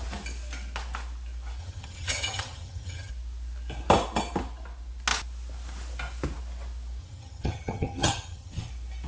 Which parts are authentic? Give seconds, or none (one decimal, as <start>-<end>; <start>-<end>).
0.0-1.6; 3.1-7.0; 8.7-9.1

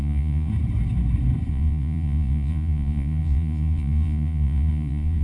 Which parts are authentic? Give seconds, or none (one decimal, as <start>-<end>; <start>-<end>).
0.5-1.5

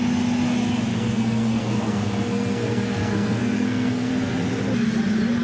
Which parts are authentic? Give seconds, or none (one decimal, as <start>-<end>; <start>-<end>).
0.0-0.9; 4.1-5.4

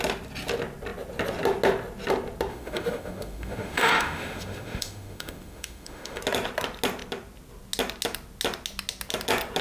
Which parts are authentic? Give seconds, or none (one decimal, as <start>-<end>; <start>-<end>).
0.0-2.5; 6.2-9.6

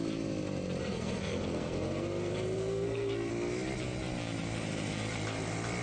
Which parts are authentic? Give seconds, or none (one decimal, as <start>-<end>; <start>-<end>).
0.0-0.8; 3.3-5.8

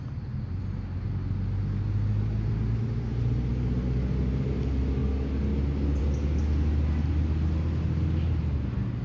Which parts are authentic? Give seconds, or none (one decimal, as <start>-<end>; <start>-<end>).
0.0-9.0